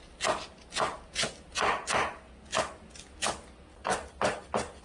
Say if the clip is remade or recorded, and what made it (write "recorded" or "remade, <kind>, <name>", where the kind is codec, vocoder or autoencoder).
recorded